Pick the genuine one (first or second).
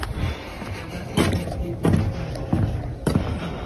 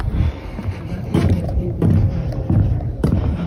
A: first